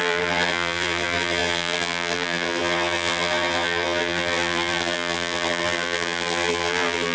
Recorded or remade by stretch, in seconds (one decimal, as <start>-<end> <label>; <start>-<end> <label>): 0.0-7.1 remade

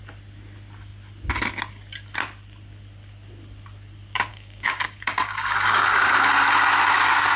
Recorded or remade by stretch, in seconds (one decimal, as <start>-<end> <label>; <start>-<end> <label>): 0.0-4.3 recorded; 4.3-6.3 remade; 6.3-7.4 recorded